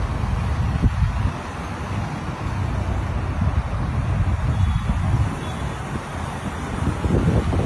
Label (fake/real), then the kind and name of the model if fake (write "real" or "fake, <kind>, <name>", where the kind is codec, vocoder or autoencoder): real